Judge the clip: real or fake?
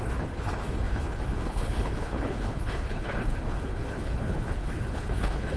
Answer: fake